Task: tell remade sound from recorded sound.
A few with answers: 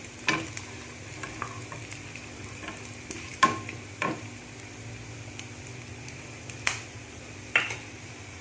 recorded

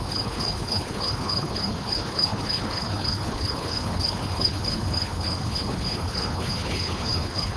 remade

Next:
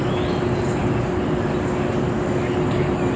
recorded